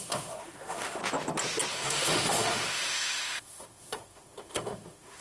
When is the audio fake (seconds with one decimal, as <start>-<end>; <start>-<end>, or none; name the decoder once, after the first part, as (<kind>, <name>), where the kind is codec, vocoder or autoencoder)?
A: 0.0-1.0 (autoencoder, DAC-VAE); 1.7-5.2